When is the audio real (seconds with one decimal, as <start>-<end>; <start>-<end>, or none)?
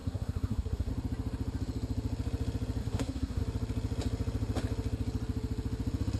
0.9-2.8; 3.4-6.2